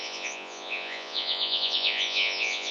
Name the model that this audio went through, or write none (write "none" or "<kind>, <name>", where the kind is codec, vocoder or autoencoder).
vocoder, Vocos